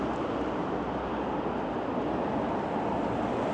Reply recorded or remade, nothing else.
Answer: recorded